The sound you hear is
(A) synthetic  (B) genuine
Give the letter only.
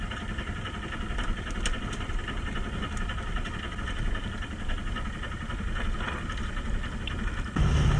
B